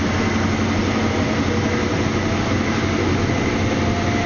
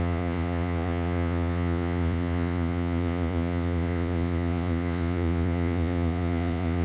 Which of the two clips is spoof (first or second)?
second